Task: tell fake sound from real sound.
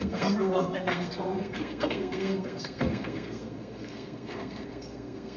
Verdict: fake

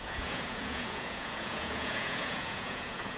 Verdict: fake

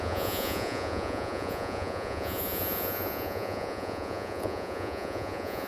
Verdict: fake